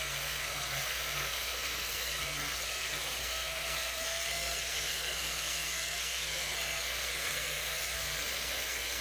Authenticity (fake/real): fake